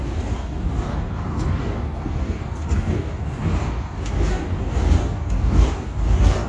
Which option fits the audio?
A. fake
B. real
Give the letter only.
A